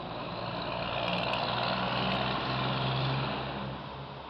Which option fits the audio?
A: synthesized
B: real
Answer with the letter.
B